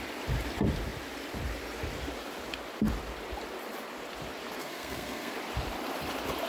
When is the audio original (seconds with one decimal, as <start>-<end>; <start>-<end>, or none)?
0.0-4.6; 5.3-6.5